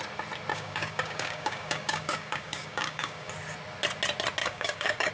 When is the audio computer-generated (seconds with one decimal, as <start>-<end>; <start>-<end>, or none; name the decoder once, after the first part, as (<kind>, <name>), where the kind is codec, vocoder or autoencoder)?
0.5-3.3 (codec, DAC); 4.4-5.1